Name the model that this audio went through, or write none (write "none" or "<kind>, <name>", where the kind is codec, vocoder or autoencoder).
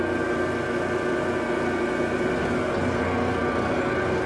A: none